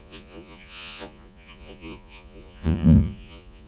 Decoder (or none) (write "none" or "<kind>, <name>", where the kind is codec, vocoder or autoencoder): vocoder, Vocos